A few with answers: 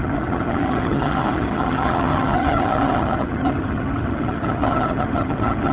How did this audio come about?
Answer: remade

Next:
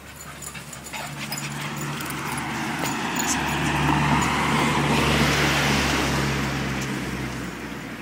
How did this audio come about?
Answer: recorded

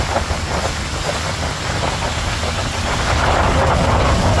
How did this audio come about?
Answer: recorded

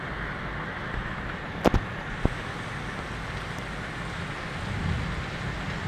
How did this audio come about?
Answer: recorded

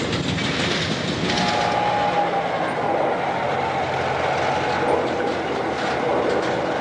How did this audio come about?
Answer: recorded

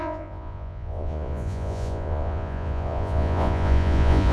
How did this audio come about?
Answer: remade